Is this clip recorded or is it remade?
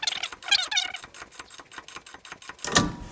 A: recorded